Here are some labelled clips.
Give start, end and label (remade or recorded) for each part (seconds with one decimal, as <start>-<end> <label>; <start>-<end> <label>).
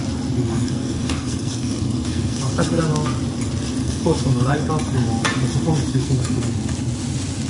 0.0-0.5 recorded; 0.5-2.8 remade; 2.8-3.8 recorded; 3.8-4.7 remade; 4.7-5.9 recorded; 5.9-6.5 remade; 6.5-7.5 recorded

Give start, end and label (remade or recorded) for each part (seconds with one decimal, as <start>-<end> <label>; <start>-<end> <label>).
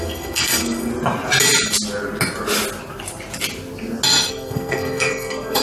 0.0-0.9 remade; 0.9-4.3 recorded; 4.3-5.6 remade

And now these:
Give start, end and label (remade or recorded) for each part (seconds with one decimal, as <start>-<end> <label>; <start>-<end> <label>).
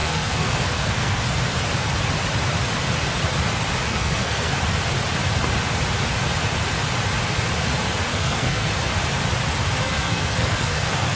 0.0-1.2 remade; 1.2-3.9 recorded; 3.9-4.5 remade; 4.5-8.1 recorded; 8.1-8.7 remade; 8.7-9.8 recorded; 9.8-11.2 remade